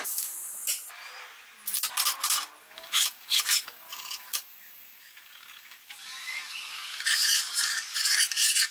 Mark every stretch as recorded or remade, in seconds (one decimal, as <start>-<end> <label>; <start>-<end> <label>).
0.0-0.7 remade; 0.7-2.6 recorded; 2.6-8.7 remade